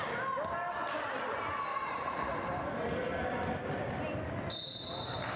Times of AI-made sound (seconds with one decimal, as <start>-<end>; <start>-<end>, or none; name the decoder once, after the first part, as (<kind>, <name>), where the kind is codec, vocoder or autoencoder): 1.7-2.3 (vocoder, Vocos)